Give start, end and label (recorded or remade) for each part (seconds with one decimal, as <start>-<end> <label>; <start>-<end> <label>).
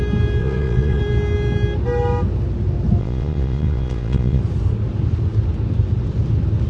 0.0-0.4 recorded; 0.4-1.0 remade; 1.0-3.0 recorded; 3.0-4.4 remade; 4.4-6.7 recorded